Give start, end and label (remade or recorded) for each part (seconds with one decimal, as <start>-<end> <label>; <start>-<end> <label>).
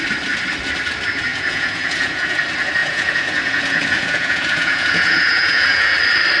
0.0-1.3 recorded; 1.3-2.4 remade; 2.4-2.8 recorded; 2.8-6.0 remade; 6.0-6.4 recorded